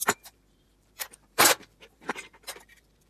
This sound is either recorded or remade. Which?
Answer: remade